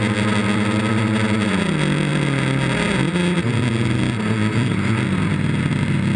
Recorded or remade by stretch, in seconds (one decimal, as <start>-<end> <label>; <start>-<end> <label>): 0.0-6.2 recorded